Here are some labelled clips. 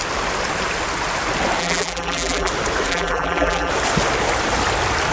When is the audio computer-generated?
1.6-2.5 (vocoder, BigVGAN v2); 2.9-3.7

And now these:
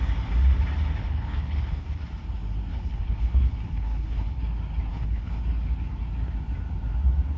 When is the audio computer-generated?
1.0-2.0 (codec, HILCodec); 2.7-4.4; 4.9-5.4

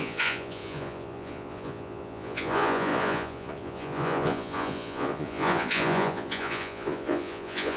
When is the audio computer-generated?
0.0-7.8 (vocoder, Vocos)

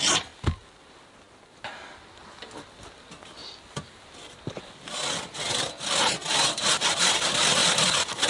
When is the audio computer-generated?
none

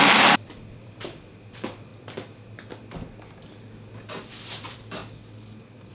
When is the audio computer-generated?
0.0-1.9 (vocoder, BigVGAN v2); 4.3-5.0